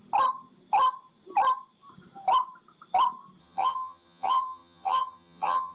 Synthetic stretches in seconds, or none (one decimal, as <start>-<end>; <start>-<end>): 3.4-5.7

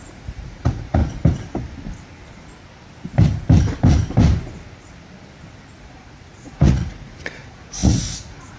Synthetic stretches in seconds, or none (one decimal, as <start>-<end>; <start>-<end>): 0.0-1.0; 5.8-8.6

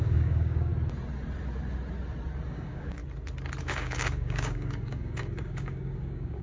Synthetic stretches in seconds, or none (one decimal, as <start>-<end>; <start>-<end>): 0.0-0.7; 2.5-3.0; 3.6-6.4

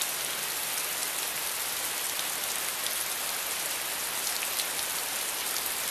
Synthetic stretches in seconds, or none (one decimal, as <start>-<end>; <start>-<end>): none

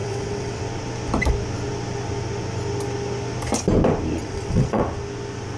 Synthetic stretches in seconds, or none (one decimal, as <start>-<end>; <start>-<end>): 0.0-0.6; 4.2-4.8

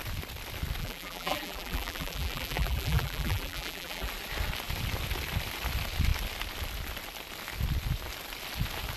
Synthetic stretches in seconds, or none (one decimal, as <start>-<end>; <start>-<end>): 0.8-4.1